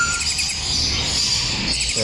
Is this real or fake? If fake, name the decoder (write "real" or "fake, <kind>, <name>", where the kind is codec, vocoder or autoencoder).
real